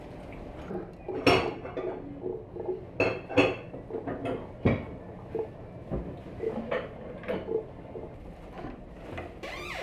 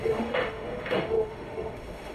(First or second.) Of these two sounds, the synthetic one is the second